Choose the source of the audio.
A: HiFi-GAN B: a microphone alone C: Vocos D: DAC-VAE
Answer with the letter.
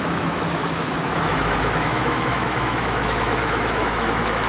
D